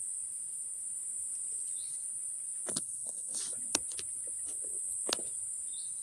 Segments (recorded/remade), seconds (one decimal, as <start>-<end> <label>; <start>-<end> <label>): 0.0-2.7 recorded; 2.7-3.4 remade; 3.4-6.0 recorded